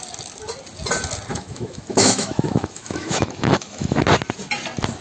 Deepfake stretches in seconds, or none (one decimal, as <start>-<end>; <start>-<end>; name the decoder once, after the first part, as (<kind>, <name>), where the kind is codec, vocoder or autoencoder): 1.3-4.0 (autoencoder, DAC-VAE)